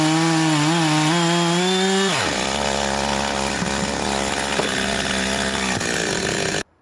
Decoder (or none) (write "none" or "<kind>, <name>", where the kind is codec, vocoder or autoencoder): none